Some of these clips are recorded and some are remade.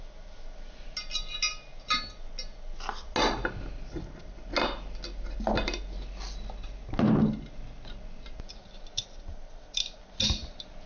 recorded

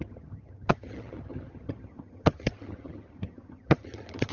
remade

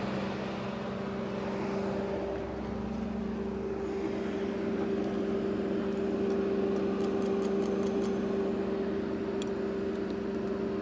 recorded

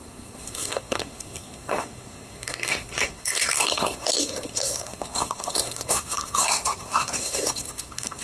remade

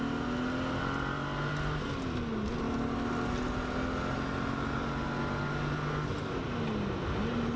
recorded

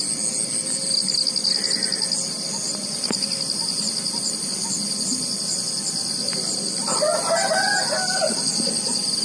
recorded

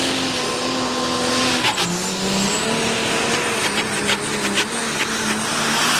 recorded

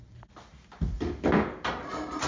recorded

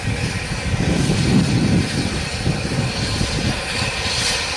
recorded